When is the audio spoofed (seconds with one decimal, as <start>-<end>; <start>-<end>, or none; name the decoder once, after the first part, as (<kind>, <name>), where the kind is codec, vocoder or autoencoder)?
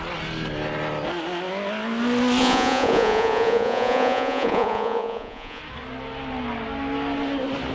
2.4-5.6 (vocoder, Vocos)